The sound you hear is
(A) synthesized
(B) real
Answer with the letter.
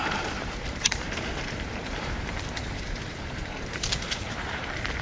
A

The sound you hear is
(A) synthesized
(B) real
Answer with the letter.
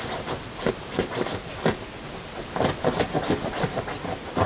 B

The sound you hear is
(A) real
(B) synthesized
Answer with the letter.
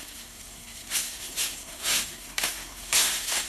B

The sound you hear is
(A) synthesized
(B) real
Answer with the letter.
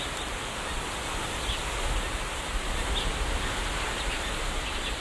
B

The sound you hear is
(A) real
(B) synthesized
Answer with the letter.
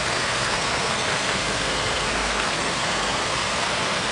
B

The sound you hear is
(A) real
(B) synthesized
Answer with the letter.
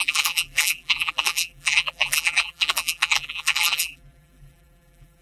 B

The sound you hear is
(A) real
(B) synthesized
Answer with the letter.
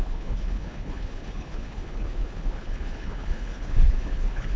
B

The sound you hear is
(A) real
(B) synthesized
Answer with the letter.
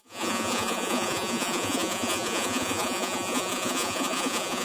B